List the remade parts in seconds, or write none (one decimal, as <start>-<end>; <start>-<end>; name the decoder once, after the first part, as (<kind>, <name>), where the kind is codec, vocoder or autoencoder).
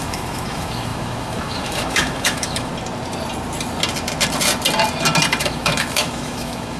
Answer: 0.0-2.7 (autoencoder, DAC-VAE); 5.4-6.8